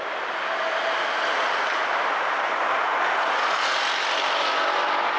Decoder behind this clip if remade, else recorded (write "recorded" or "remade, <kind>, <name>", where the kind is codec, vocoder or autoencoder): recorded